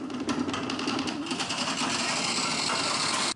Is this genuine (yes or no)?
yes